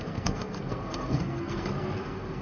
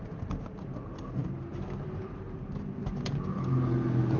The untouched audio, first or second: second